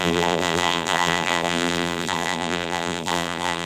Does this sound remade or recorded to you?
remade